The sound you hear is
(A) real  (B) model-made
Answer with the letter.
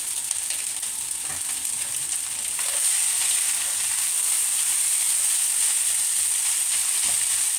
A